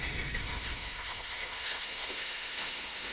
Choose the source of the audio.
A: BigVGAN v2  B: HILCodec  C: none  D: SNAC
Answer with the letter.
D